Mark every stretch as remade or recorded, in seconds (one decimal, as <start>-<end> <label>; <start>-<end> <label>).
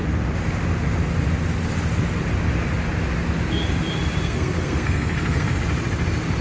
0.0-4.2 recorded; 4.2-5.6 remade; 5.6-6.4 recorded